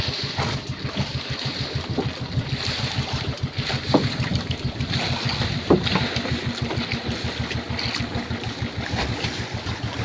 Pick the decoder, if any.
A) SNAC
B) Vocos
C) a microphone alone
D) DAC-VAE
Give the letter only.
C